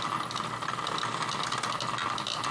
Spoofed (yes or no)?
no